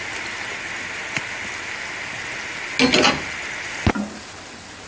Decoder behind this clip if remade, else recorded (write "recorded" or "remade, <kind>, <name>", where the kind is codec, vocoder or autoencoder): recorded